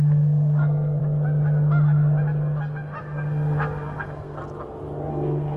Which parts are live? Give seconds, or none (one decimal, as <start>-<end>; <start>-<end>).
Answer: 1.0-3.0; 4.4-5.1